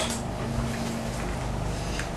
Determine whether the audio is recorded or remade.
recorded